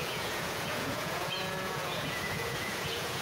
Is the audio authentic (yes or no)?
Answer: no